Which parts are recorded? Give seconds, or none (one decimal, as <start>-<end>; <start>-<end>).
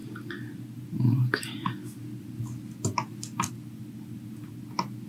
0.0-5.1